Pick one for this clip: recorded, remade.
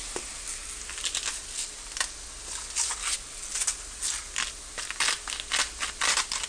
recorded